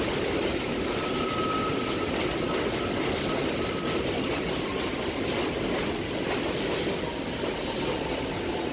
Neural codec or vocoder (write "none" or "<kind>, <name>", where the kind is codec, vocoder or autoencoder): none